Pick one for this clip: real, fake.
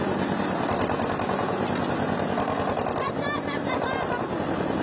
real